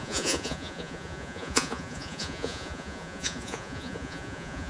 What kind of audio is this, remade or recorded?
remade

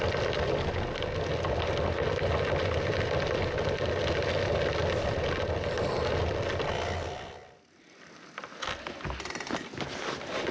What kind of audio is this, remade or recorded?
recorded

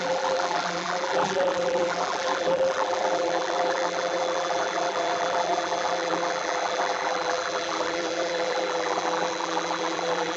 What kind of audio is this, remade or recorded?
remade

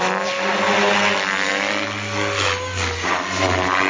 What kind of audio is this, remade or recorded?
recorded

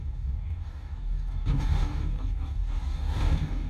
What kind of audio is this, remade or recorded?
remade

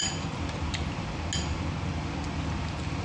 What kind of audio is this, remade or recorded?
recorded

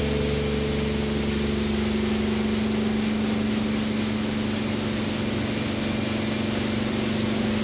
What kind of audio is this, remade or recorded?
recorded